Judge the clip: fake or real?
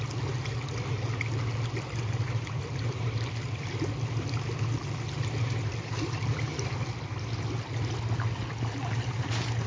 real